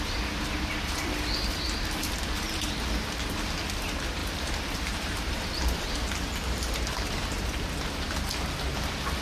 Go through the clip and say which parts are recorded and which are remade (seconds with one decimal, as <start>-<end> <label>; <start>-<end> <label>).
0.0-4.2 recorded; 4.2-7.5 remade; 7.5-9.2 recorded